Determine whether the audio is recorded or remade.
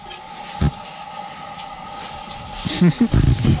recorded